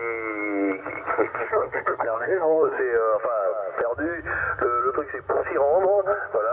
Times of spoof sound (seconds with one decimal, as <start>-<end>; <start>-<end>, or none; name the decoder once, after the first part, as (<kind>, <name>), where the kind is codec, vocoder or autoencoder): 1.1-2.8 (codec, SNAC)